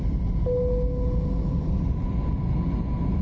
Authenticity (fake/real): real